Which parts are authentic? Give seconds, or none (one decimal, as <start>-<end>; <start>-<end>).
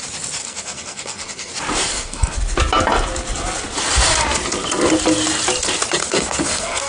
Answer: 0.0-0.4; 1.5-1.9; 2.4-6.0